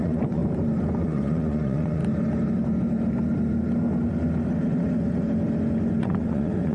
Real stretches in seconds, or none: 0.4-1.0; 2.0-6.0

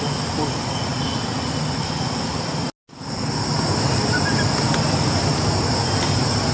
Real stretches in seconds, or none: 0.0-6.5

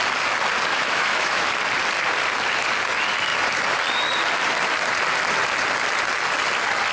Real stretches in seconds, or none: 0.0-0.7; 1.5-6.9

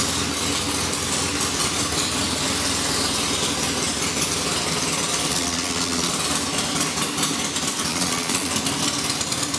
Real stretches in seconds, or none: 0.0-5.3; 6.1-7.9; 8.5-9.6

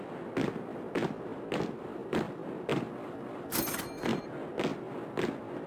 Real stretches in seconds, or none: 0.0-2.0; 4.2-5.7

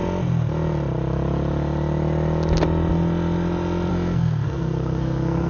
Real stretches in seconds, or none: 0.0-3.9